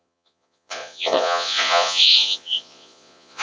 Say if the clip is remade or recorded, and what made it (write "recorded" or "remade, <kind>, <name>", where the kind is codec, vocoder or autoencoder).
remade, vocoder, Vocos